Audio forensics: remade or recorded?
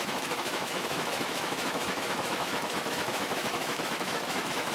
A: remade